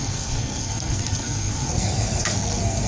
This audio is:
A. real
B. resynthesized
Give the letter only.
B